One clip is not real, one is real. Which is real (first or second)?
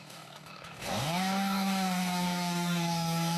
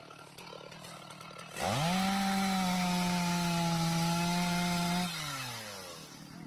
second